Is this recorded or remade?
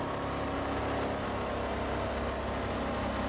recorded